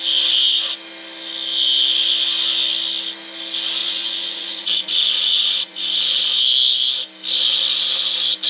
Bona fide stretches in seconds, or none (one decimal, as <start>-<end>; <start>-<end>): 0.0-3.8; 6.2-8.5